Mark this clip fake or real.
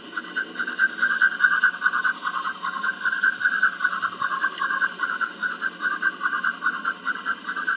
real